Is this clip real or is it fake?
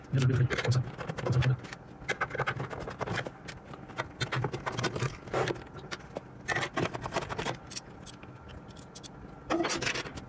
real